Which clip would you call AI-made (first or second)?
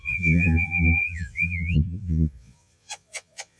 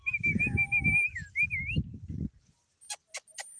first